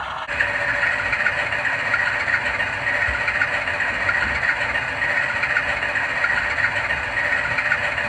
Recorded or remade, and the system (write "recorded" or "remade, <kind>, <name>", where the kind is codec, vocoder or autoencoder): recorded